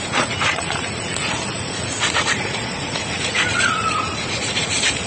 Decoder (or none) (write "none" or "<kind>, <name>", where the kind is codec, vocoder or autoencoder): vocoder, Vocos